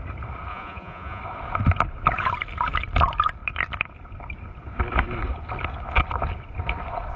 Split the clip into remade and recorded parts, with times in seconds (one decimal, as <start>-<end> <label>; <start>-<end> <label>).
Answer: 0.0-0.5 recorded; 0.5-1.2 remade; 1.2-7.2 recorded